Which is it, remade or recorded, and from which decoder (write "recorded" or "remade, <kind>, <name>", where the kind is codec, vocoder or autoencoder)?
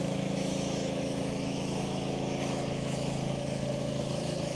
remade, autoencoder, DAC-VAE